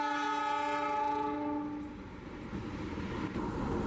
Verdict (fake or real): real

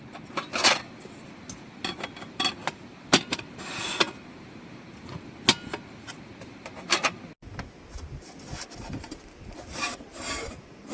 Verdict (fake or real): real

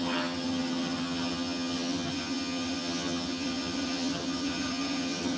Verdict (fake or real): fake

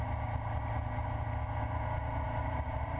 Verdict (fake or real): real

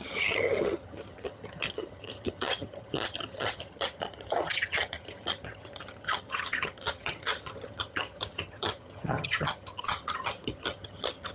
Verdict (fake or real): fake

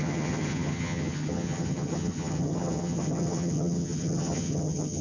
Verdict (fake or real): fake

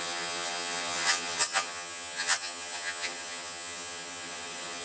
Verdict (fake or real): fake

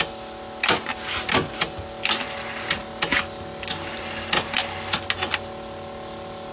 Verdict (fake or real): real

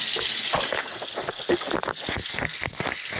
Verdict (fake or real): real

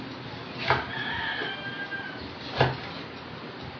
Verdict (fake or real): real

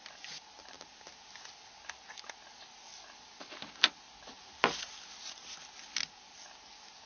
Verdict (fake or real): real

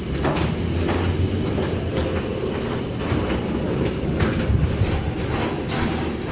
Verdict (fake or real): real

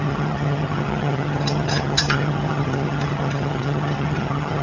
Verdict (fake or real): fake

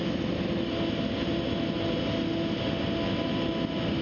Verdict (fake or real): real